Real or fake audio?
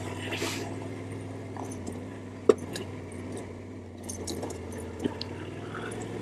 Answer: real